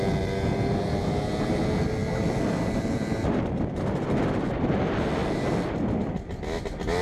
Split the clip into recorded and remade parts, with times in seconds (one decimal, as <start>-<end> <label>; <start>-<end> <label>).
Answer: 0.0-7.0 recorded